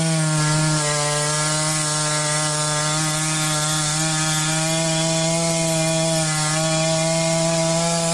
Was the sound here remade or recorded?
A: recorded